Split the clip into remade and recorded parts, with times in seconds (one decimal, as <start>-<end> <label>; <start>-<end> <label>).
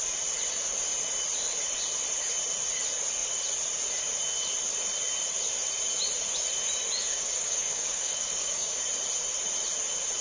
0.0-7.1 recorded; 7.1-8.8 remade; 8.8-10.2 recorded